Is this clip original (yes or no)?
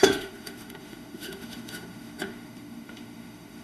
no